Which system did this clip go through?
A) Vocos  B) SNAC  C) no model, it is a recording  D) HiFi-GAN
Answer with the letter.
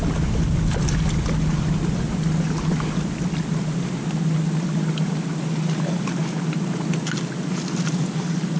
C